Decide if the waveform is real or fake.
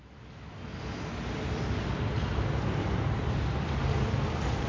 real